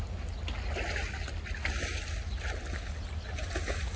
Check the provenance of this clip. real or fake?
real